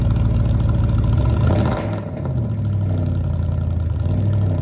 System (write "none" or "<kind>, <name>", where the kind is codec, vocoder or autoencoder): none